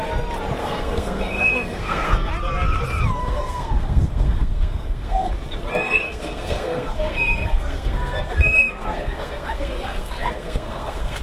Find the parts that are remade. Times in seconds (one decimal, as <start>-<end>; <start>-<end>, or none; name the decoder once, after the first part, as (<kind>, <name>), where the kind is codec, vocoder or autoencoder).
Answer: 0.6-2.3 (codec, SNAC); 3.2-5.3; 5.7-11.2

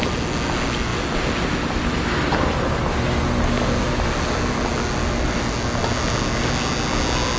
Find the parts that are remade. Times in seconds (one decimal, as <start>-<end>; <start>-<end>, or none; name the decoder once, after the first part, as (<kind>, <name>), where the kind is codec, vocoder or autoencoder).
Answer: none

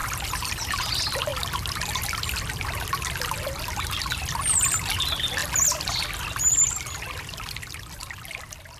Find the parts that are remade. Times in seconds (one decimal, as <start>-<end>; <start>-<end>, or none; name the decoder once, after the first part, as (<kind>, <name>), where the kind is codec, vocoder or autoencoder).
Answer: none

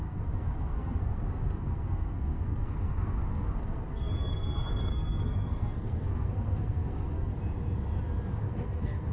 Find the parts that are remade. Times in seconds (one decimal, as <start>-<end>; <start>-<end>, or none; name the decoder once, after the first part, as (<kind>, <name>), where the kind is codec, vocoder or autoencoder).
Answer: 0.0-7.3 (codec, SNAC); 8.4-9.1

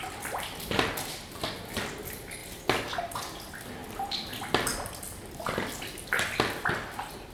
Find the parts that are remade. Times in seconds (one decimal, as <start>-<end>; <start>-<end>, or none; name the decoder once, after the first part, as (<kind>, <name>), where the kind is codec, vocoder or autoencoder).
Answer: none

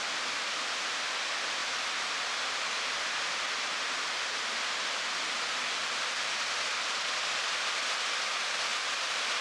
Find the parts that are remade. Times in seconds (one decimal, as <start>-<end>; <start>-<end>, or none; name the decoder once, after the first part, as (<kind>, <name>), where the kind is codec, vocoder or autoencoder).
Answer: none